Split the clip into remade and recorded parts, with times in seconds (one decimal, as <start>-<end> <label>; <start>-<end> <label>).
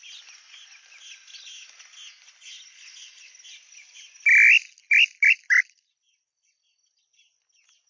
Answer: 0.0-7.9 recorded